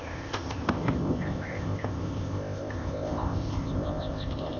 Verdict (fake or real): fake